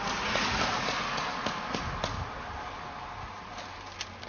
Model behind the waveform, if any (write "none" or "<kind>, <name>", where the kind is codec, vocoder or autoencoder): none